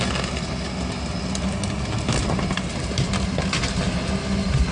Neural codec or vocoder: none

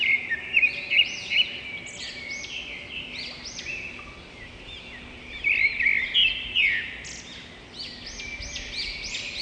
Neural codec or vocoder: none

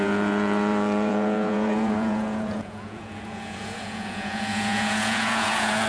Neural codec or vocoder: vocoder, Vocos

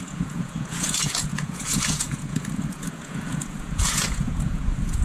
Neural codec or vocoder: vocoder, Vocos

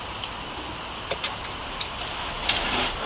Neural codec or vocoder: none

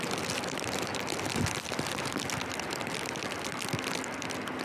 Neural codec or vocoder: none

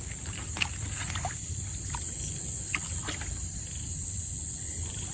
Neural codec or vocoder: none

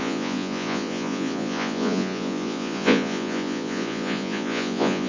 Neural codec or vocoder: vocoder, Vocos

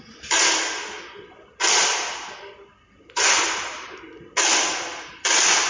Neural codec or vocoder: none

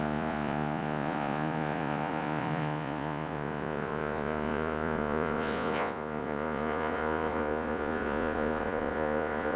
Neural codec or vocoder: vocoder, Vocos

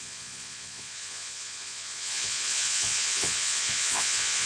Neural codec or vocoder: vocoder, Vocos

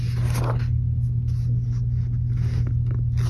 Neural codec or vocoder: none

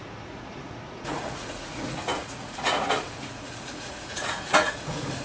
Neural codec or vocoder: vocoder, Vocos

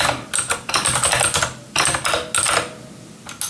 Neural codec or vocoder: none